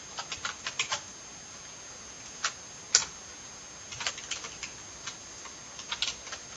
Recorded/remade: recorded